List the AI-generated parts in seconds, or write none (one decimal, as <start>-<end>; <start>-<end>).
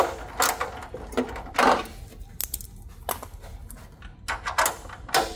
none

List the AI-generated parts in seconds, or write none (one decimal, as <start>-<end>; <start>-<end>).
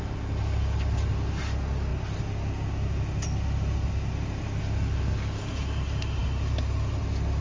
none